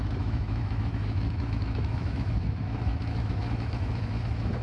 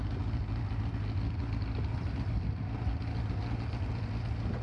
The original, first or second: second